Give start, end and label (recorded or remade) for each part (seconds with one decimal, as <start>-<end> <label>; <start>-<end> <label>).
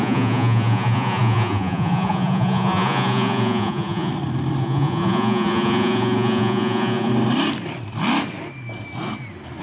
0.0-4.1 remade; 4.1-4.6 recorded; 4.6-7.1 remade; 7.1-9.6 recorded